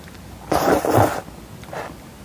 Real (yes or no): yes